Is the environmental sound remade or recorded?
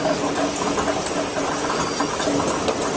recorded